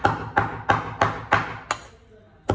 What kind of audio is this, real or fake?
real